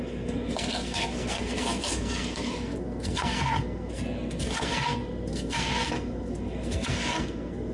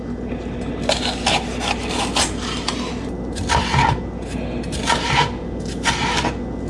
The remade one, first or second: first